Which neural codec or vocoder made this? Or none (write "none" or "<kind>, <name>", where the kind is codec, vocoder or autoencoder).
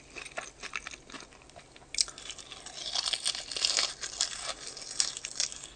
none